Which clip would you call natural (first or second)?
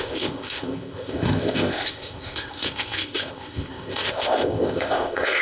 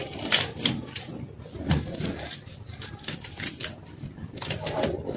second